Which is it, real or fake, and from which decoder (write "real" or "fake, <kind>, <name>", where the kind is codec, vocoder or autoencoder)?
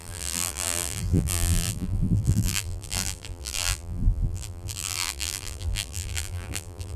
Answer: fake, vocoder, BigVGAN v2